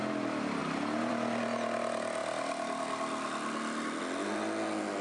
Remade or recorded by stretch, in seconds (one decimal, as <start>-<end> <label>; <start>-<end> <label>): 0.0-5.0 recorded